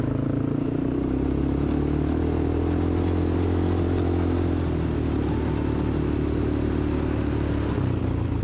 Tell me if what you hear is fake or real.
real